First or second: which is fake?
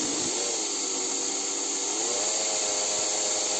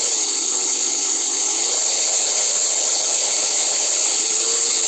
second